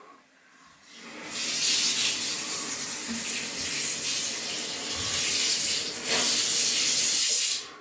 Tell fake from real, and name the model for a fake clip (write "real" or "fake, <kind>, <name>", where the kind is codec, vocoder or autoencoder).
real